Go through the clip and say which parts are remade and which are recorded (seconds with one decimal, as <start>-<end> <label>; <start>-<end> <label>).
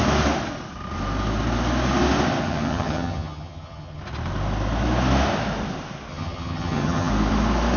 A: 0.0-2.4 recorded; 2.4-4.0 remade; 4.0-6.1 recorded; 6.1-7.1 remade; 7.1-7.8 recorded